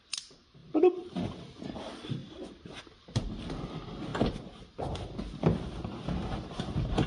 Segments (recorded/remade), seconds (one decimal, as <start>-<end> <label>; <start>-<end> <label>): 0.0-0.6 recorded; 0.6-1.6 remade; 1.6-2.2 recorded; 2.2-2.8 remade; 2.8-7.1 recorded